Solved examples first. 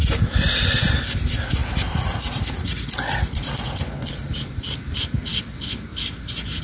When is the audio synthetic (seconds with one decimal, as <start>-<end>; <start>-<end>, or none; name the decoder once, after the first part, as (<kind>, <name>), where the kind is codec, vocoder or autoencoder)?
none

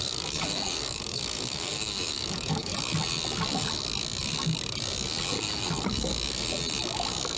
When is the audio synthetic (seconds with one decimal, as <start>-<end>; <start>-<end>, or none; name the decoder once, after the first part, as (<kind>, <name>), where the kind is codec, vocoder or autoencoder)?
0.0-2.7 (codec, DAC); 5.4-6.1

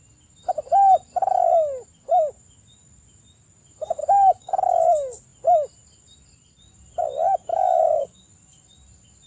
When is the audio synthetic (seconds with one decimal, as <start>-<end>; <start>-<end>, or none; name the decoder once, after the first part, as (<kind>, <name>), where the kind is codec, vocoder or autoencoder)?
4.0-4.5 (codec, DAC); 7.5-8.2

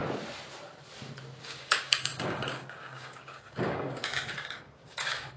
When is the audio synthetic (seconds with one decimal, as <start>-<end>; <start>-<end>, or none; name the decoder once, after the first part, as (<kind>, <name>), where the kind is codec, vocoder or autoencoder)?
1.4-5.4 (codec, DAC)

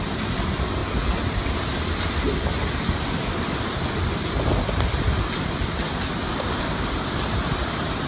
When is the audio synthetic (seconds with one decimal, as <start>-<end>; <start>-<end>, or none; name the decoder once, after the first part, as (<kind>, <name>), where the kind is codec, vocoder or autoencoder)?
6.3-6.9 (codec, DAC)